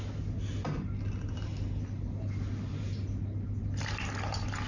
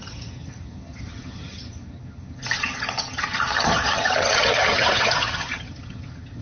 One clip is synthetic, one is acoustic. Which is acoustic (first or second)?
first